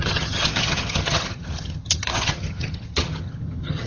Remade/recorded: remade